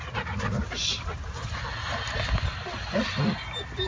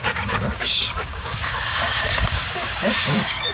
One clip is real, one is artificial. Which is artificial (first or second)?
second